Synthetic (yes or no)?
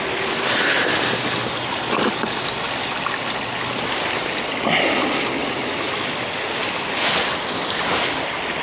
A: no